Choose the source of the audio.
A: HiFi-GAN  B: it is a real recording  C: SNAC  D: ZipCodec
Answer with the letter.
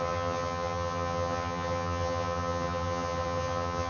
A